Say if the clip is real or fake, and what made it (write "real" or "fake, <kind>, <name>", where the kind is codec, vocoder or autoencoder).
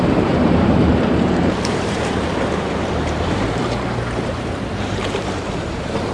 fake, vocoder, BigVGAN v2